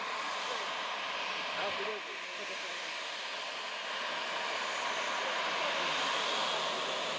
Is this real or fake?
real